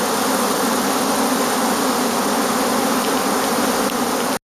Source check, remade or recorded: recorded